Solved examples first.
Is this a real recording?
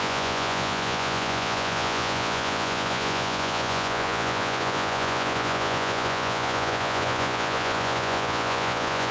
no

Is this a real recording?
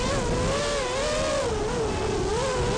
yes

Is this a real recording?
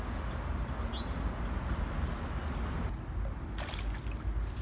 yes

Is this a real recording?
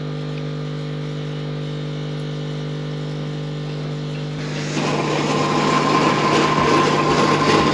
yes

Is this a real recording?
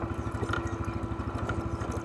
yes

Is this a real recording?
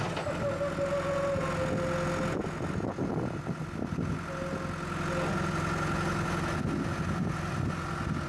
yes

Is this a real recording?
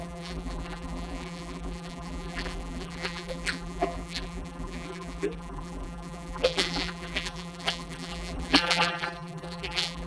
no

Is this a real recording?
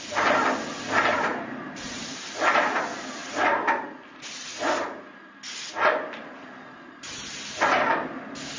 yes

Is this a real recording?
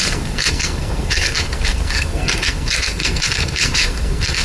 no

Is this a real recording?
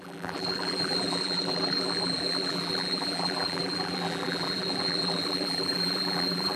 no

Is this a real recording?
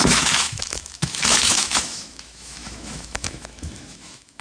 no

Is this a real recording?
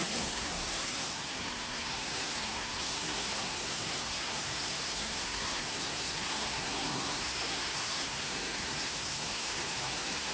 no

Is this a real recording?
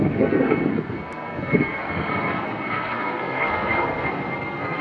no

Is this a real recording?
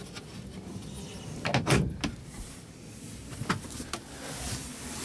yes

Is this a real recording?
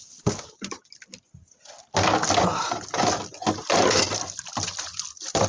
yes